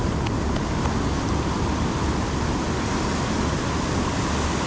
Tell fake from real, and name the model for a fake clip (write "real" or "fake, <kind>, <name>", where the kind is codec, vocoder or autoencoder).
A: real